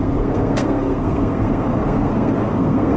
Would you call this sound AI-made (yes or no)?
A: yes